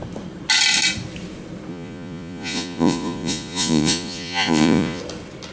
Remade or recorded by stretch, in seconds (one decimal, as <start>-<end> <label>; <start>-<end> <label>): 0.0-1.7 recorded; 1.7-5.0 remade; 5.0-5.5 recorded